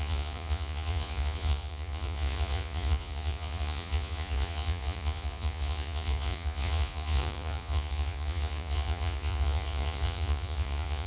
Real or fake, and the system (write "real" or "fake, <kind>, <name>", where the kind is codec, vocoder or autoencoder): fake, vocoder, Vocos